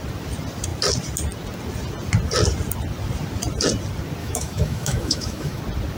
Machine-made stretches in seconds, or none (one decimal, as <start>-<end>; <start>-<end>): 4.2-5.6